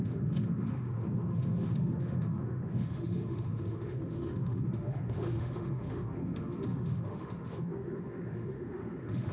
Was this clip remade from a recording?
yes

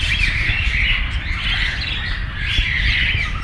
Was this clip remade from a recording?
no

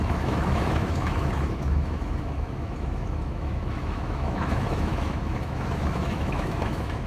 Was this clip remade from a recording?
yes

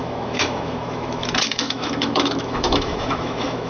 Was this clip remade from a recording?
yes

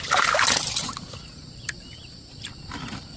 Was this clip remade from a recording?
no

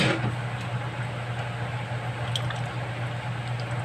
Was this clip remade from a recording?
no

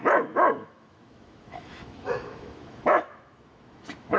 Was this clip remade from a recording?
yes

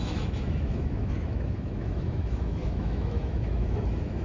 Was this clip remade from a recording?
yes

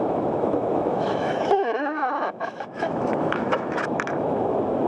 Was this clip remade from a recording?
yes